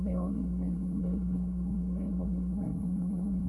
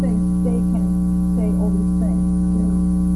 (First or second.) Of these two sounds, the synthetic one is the first